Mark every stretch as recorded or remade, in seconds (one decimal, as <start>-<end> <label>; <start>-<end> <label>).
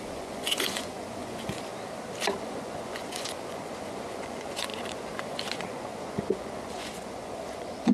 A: 0.0-1.7 remade; 1.7-2.4 recorded; 2.4-7.9 remade